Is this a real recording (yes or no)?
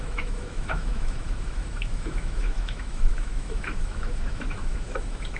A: no